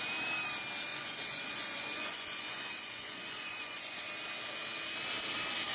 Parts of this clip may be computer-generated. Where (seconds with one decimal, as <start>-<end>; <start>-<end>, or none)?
0.9-4.1